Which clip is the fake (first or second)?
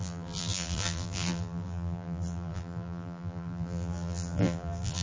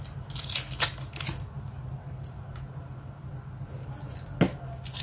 first